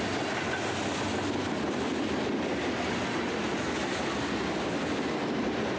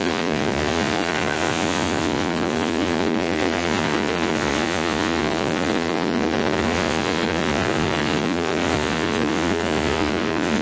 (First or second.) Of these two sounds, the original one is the first